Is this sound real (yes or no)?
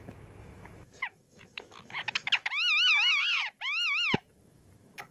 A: no